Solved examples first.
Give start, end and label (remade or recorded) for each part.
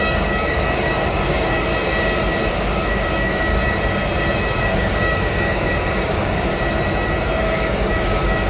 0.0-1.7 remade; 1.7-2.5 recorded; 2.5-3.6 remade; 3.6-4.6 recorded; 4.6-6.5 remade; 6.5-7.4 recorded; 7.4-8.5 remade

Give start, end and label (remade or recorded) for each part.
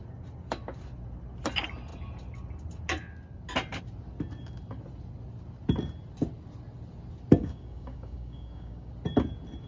0.0-7.4 recorded; 7.4-8.9 remade; 8.9-9.7 recorded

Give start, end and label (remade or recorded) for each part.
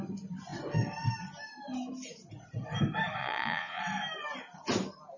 0.0-3.2 recorded; 3.2-3.8 remade; 3.8-5.2 recorded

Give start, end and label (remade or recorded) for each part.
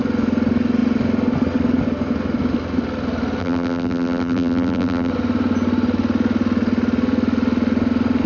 0.0-3.4 recorded; 3.4-5.1 remade; 5.1-8.3 recorded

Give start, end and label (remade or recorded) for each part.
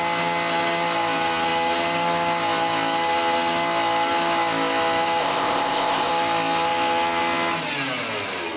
0.0-5.2 recorded; 5.2-6.1 remade; 6.1-8.6 recorded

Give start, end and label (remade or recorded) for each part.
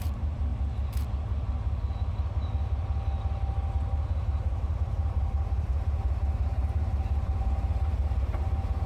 0.0-0.5 remade; 0.5-3.5 recorded; 3.5-8.9 remade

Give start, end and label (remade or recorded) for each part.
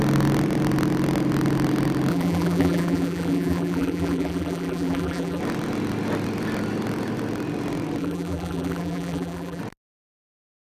0.0-2.1 recorded; 2.1-5.4 remade; 5.4-8.0 recorded; 8.0-9.6 remade; 9.6-10.6 recorded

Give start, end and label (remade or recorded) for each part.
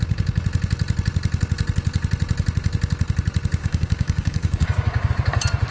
0.0-3.6 recorded; 3.6-5.1 remade; 5.1-5.7 recorded